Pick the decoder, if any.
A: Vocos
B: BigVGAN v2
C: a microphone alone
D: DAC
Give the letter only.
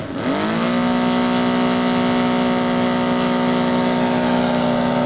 C